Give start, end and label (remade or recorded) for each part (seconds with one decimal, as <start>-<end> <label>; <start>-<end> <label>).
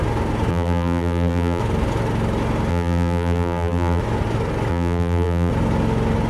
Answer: 0.0-0.5 recorded; 0.5-1.6 remade; 1.6-2.7 recorded; 2.7-4.0 remade; 4.0-4.7 recorded; 4.7-5.5 remade; 5.5-6.3 recorded